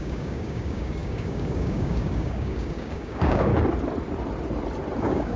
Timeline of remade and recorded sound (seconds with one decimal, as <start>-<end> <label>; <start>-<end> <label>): 0.0-3.5 remade; 3.5-5.0 recorded; 5.0-5.4 remade